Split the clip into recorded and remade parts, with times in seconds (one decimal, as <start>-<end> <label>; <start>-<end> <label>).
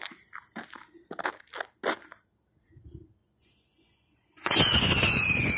0.0-3.2 recorded; 3.2-5.6 remade